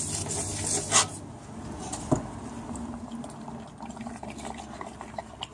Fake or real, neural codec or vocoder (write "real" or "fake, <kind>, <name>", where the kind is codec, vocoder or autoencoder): real